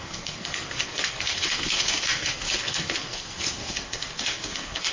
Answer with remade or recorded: remade